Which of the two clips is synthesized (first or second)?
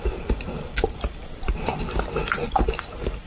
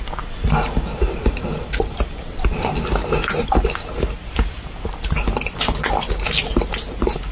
first